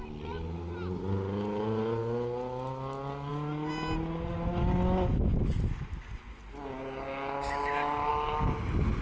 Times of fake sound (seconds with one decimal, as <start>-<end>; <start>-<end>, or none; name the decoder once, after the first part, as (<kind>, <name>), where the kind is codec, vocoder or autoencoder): none